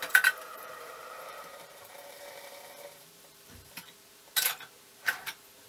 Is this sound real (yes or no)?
no